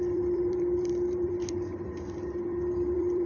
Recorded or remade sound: remade